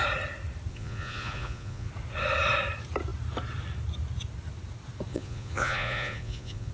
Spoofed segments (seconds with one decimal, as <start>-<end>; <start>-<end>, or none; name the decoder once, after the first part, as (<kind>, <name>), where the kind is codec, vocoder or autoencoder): 0.7-1.9 (vocoder, Vocos); 5.1-6.7

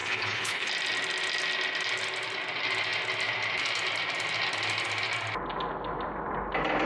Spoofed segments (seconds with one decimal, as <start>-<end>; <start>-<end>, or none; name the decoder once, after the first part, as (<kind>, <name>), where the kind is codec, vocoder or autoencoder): 0.0-0.7 (codec, HILCodec)

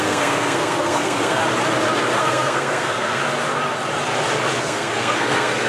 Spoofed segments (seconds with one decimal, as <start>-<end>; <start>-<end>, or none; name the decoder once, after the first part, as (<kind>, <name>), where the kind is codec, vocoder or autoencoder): 0.0-1.4 (codec, SNAC); 2.2-3.2; 4.6-5.7

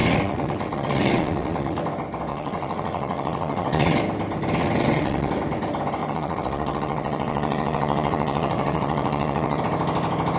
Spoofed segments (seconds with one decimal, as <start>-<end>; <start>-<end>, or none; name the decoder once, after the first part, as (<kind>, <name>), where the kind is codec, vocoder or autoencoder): 0.0-1.8 (vocoder, WaveNeXt); 2.3-4.0; 4.6-5.3; 6.0-9.6

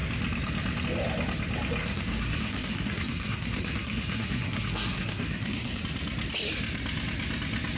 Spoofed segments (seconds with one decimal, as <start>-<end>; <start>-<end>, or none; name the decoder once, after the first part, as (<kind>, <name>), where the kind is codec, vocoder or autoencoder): 1.8-5.8 (codec, SNAC)

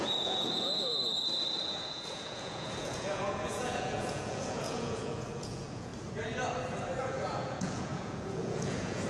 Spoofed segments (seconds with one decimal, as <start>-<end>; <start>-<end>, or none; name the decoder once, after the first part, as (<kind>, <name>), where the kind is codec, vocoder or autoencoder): 0.0-0.9 (vocoder, Vocos); 1.7-5.9; 7.0-9.1

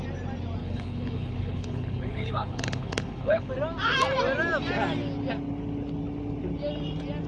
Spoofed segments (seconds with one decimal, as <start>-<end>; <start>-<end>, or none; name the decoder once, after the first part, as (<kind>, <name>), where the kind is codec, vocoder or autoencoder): 0.6-3.5 (codec, HILCodec)